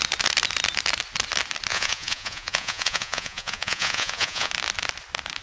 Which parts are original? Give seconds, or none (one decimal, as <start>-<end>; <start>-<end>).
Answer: 0.0-1.7; 4.5-5.4